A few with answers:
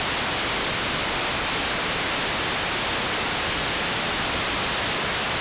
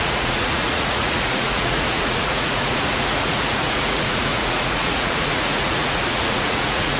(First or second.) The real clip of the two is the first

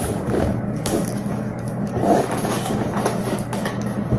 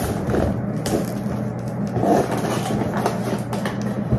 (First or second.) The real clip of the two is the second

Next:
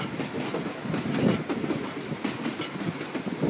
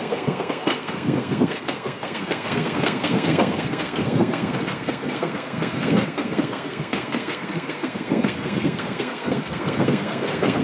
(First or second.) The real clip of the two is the first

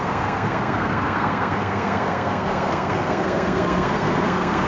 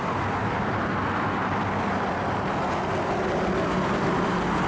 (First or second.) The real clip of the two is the second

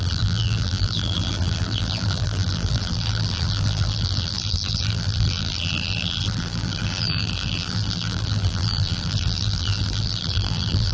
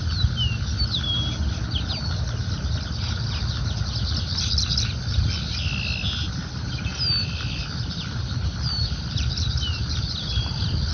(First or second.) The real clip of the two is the second